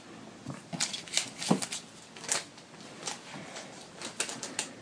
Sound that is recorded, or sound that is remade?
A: recorded